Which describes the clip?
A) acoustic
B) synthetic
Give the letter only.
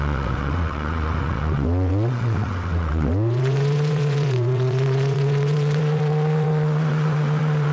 B